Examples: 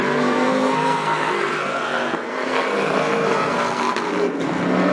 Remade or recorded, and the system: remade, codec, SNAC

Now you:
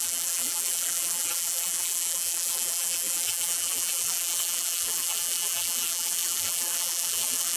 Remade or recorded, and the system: remade, vocoder, BigVGAN v2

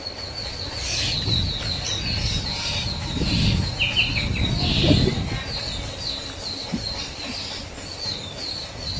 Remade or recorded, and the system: recorded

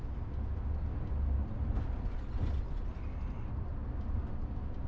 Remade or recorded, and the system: recorded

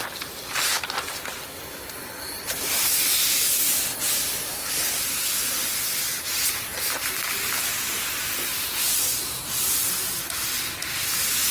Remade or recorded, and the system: recorded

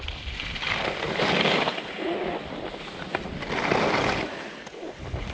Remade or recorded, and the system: recorded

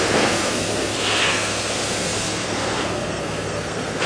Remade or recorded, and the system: remade, codec, SNAC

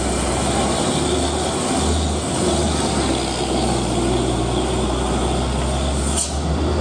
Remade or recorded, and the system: recorded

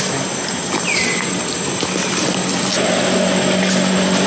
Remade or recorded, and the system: recorded